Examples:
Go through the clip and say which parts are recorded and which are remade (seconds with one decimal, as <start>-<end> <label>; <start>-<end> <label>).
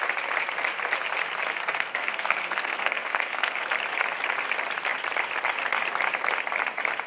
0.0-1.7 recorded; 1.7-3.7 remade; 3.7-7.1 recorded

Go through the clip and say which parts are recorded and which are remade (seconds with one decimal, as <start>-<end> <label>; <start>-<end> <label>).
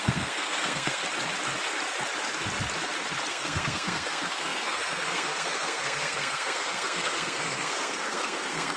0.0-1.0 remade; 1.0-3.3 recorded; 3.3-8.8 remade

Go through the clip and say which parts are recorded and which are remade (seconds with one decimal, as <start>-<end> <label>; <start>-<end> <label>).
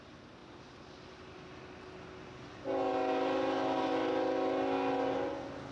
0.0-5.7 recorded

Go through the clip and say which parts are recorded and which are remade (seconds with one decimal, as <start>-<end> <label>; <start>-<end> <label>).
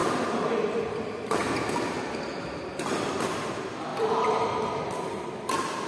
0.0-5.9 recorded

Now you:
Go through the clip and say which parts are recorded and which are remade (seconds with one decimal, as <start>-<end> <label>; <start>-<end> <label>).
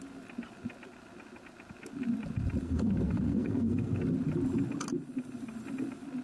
0.0-2.6 recorded; 2.6-4.0 remade; 4.0-6.2 recorded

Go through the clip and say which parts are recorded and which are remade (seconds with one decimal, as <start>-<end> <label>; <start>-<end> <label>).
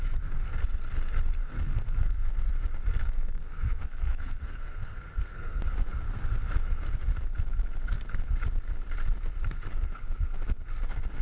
0.0-1.4 recorded; 1.4-2.3 remade; 2.3-3.0 recorded; 3.0-5.6 remade; 5.6-11.2 recorded